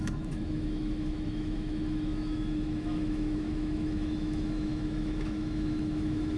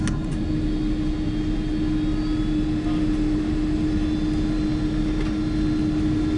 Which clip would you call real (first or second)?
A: second